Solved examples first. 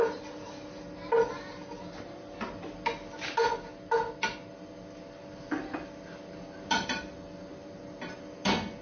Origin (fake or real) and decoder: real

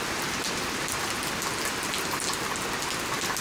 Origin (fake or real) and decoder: real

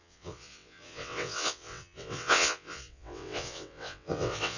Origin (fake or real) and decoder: fake, vocoder, WaveNeXt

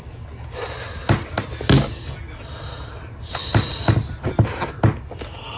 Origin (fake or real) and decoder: real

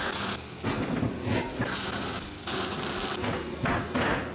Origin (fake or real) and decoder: real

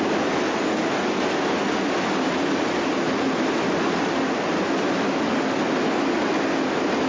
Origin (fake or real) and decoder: real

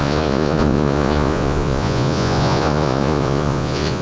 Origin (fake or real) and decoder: fake, vocoder, Vocos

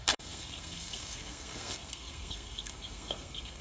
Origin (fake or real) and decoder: fake, codec, SNAC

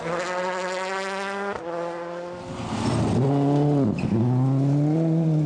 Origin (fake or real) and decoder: real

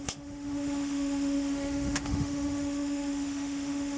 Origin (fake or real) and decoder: fake, autoencoder, DAC-VAE